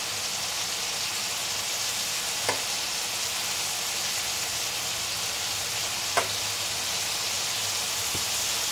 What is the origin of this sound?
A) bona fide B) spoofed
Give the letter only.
A